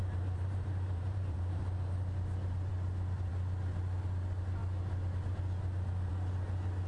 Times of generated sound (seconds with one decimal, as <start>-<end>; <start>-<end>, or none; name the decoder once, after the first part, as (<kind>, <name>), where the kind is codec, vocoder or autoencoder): 0.0-1.6 (vocoder, BigVGAN v2)